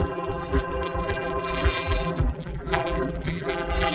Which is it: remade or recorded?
remade